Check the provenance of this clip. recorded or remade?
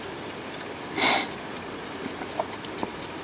recorded